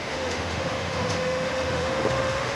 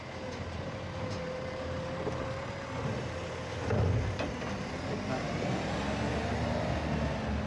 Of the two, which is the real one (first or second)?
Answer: second